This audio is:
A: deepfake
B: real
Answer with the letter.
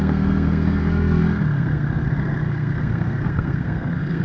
A